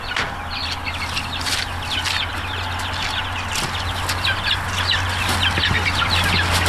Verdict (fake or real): real